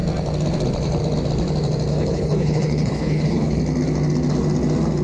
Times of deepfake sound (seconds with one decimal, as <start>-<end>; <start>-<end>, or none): 1.9-3.6